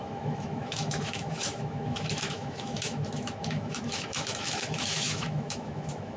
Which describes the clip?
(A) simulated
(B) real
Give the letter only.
A